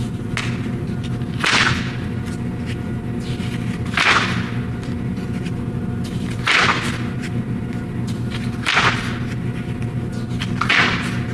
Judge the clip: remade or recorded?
recorded